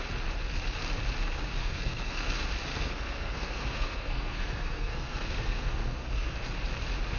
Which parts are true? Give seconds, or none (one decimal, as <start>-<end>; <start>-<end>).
0.0-1.6; 2.3-2.7; 6.5-7.2